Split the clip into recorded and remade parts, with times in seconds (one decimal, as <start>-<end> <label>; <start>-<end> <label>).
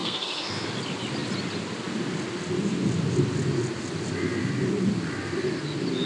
0.0-0.5 remade; 0.5-6.1 recorded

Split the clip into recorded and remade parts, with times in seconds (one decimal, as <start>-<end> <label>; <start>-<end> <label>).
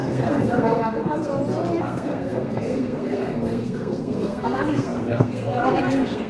0.0-1.3 remade; 1.3-1.8 recorded; 1.8-6.3 remade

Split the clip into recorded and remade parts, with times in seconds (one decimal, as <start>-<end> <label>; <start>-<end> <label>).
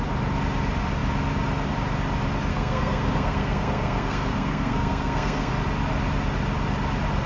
0.0-2.5 recorded; 2.5-5.5 remade; 5.5-7.3 recorded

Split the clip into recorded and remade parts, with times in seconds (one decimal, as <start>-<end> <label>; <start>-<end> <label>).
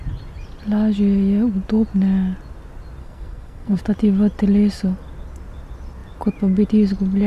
0.0-3.0 recorded; 3.0-3.8 remade; 3.8-7.3 recorded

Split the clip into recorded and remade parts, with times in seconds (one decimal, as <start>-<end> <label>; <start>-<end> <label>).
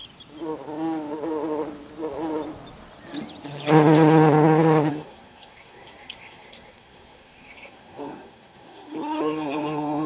0.0-4.9 recorded; 4.9-10.1 remade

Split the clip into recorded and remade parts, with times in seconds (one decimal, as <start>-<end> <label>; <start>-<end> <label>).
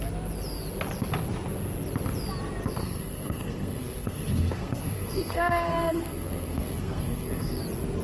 0.0-2.8 recorded; 2.8-7.6 remade; 7.6-8.0 recorded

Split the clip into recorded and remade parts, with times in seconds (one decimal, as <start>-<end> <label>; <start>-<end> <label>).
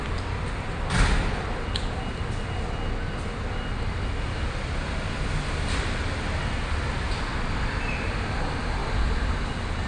0.0-9.9 recorded